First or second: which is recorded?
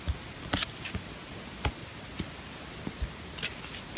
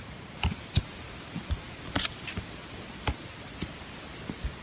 second